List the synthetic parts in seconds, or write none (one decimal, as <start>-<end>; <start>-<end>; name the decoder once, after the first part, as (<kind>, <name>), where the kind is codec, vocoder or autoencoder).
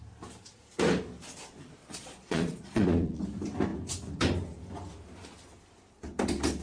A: 1.8-3.2 (vocoder, Vocos)